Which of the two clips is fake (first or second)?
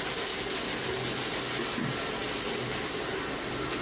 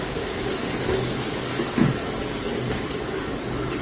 second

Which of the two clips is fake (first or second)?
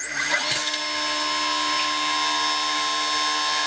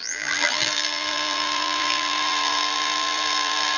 second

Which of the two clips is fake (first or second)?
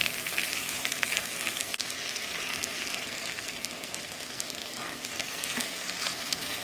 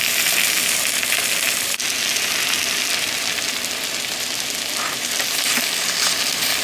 first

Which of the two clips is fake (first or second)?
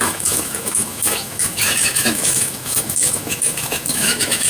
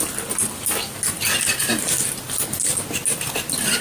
first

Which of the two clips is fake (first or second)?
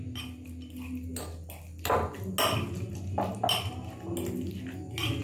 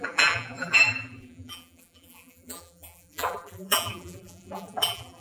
second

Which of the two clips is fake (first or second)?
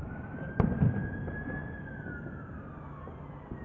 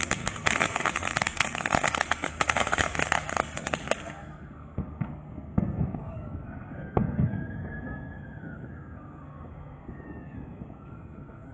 second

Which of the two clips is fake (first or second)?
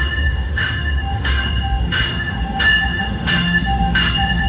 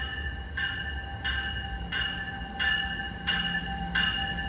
first